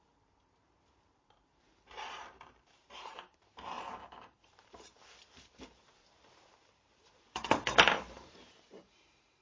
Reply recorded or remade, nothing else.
remade